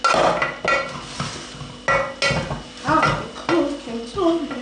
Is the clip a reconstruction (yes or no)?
no